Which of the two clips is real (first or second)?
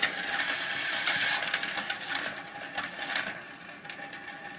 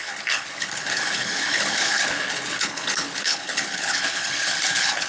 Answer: first